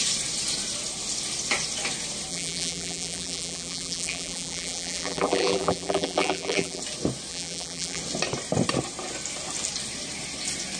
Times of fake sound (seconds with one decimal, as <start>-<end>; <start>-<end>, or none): 2.3-6.8; 7.3-8.0

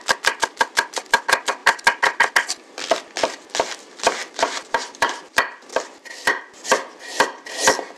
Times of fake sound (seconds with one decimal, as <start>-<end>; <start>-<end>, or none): 4.2-5.2; 5.7-6.4